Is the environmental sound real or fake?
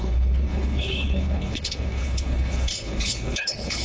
fake